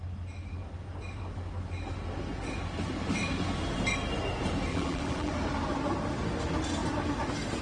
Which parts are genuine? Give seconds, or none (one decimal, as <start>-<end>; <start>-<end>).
0.0-4.7; 5.3-7.6